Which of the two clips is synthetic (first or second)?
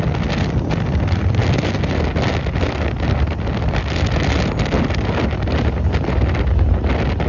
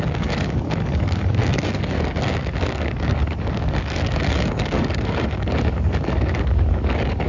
second